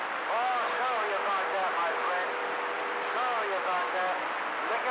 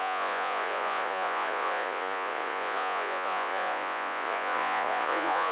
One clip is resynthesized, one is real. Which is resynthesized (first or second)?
second